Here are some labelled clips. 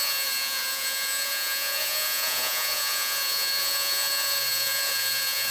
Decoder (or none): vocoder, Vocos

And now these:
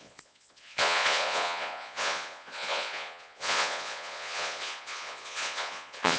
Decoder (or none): vocoder, Vocos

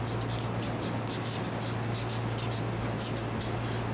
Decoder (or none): none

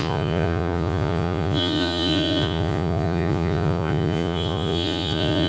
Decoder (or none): vocoder, Vocos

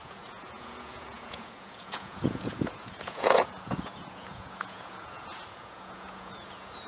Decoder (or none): vocoder, Vocos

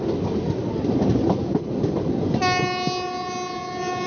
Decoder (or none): none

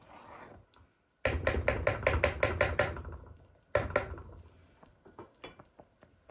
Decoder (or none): none